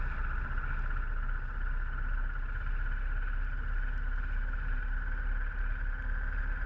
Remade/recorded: recorded